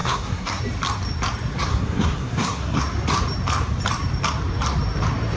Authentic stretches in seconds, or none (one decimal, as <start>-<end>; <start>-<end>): 0.6-1.7; 2.8-5.4